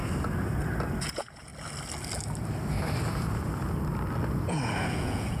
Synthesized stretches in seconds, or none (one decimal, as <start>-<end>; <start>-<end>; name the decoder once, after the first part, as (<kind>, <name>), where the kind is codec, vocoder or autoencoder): 1.0-1.5 (vocoder, Vocos); 4.5-5.4